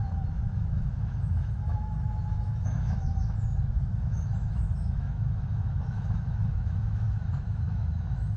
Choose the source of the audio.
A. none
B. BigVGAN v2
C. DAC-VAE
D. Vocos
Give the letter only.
C